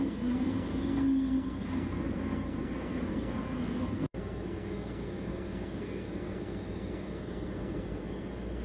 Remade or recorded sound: remade